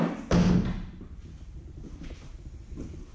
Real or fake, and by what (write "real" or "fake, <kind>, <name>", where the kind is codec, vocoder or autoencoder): real